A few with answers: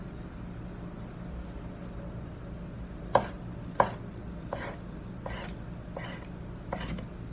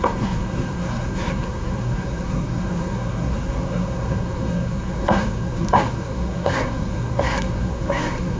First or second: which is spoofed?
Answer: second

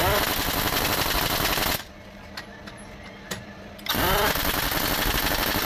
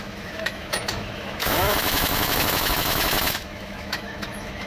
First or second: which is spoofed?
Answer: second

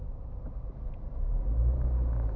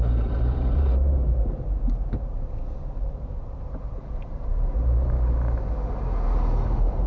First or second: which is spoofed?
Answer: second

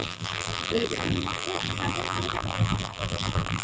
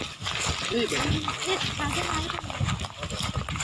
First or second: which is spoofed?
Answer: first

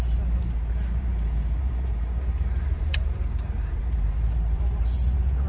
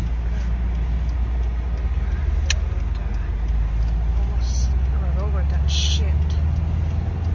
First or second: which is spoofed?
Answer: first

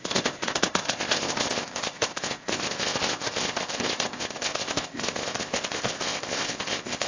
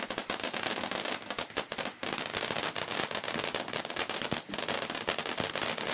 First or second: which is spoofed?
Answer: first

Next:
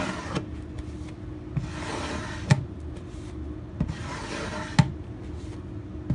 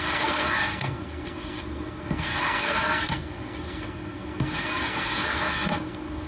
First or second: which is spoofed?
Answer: second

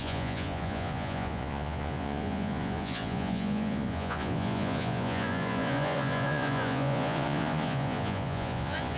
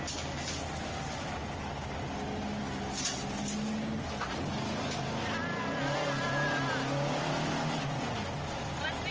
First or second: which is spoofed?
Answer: first